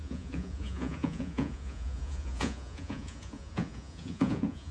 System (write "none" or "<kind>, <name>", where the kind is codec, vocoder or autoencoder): vocoder, Vocos